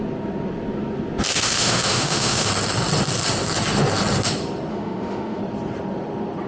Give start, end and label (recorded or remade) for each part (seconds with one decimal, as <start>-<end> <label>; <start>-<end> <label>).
0.0-1.3 recorded; 1.3-2.5 remade; 2.5-4.7 recorded; 4.7-5.4 remade; 5.4-6.5 recorded